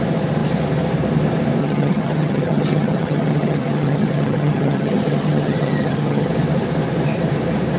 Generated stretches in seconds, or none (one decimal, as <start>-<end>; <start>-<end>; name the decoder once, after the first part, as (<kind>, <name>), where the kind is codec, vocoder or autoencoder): 1.6-6.3 (vocoder, HiFi-GAN)